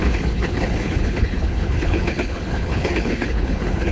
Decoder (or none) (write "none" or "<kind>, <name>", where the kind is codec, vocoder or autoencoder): codec, HILCodec